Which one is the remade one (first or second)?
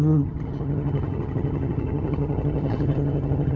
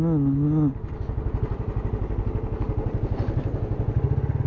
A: first